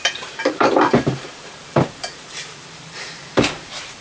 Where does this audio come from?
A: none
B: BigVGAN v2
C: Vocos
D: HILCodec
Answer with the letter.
B